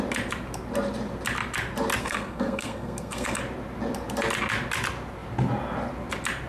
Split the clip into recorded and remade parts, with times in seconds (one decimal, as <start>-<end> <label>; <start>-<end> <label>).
0.0-2.0 recorded; 2.0-3.4 remade; 3.4-6.5 recorded